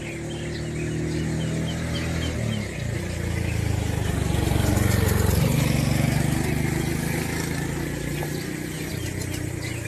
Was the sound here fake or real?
real